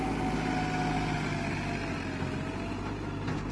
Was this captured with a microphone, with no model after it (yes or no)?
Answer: yes